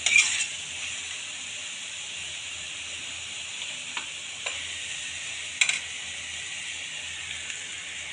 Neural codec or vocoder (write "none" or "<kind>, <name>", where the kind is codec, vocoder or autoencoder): none